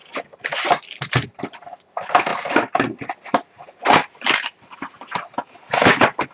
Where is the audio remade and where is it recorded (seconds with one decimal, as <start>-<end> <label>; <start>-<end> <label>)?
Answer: 0.0-6.3 recorded